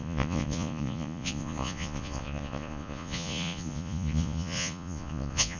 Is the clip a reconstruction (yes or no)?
yes